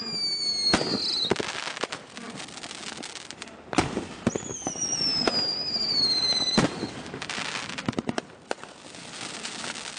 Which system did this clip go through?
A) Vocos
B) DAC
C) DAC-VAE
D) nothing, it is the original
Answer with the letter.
D